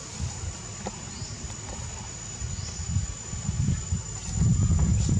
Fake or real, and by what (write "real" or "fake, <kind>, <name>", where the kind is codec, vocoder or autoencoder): real